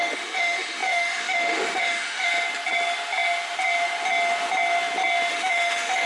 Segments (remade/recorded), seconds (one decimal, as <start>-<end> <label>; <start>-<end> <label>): 0.0-2.3 remade; 2.3-5.3 recorded; 5.3-6.1 remade